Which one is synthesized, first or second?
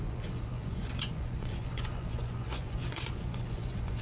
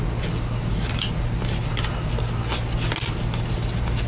first